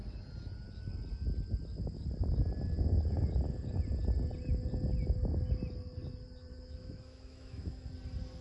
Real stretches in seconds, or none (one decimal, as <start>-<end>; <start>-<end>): 0.0-6.5; 7.9-8.4